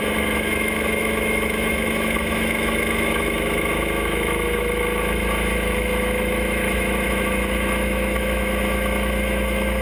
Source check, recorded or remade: remade